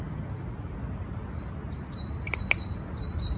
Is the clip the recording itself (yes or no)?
yes